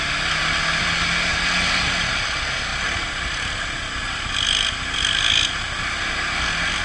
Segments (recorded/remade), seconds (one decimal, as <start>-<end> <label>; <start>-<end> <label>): 0.0-6.8 recorded